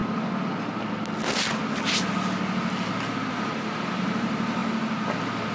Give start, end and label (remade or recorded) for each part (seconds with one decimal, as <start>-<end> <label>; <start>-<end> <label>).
0.0-3.3 recorded; 3.3-4.6 remade; 4.6-5.5 recorded